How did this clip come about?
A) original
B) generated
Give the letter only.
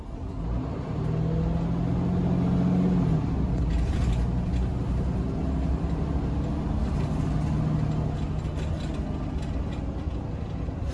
A